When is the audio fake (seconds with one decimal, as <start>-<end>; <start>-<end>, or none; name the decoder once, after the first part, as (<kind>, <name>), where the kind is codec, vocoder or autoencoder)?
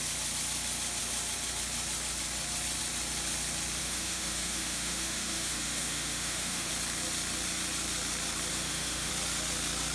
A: 3.8-6.7 (autoencoder, DAC-VAE); 8.5-9.1